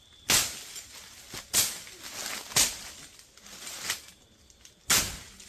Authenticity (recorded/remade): recorded